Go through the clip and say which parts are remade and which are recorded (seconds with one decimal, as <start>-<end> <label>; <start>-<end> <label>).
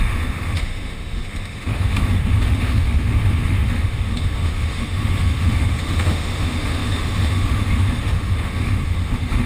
0.0-9.5 remade